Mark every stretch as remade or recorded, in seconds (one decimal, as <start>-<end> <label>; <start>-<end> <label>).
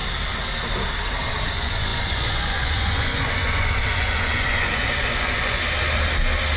0.0-1.5 recorded; 1.5-5.6 remade; 5.6-6.6 recorded